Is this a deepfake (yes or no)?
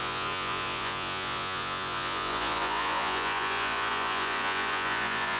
yes